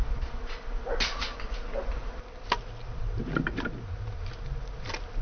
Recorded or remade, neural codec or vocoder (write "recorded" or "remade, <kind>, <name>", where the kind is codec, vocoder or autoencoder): recorded